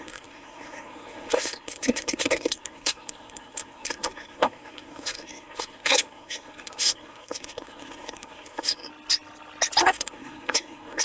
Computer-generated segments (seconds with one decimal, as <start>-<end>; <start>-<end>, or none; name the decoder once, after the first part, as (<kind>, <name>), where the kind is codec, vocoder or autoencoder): 0.0-8.9 (codec, SNAC); 9.8-11.0